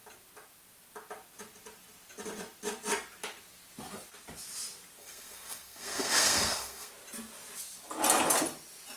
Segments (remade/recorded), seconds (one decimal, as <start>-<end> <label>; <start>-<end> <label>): 0.0-5.0 recorded; 5.0-6.9 remade; 6.9-9.0 recorded